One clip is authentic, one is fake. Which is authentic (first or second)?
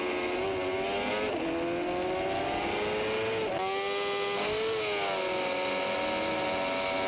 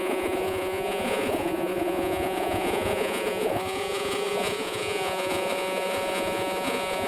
first